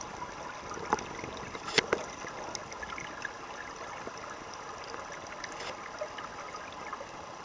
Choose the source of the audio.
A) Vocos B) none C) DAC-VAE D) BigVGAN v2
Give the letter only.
B